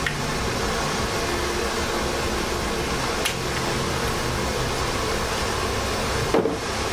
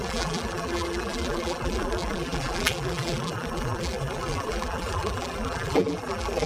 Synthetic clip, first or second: second